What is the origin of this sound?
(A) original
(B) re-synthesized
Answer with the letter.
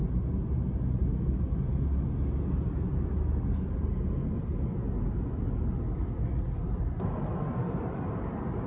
A